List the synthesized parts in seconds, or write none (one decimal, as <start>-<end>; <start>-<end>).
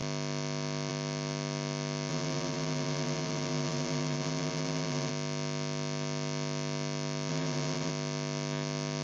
2.1-5.1; 7.3-7.9